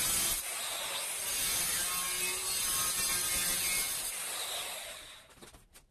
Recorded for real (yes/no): yes